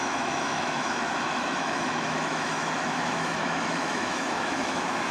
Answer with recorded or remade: remade